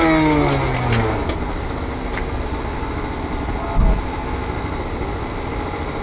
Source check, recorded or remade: recorded